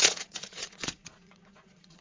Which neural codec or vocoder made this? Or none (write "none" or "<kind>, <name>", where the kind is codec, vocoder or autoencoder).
vocoder, Vocos